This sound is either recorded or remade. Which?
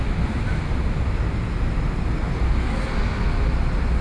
recorded